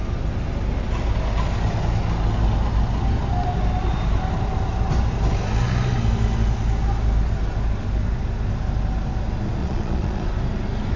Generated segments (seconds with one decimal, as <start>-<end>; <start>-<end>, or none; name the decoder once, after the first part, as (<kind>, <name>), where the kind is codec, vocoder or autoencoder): 9.6-10.3 (vocoder, Vocos)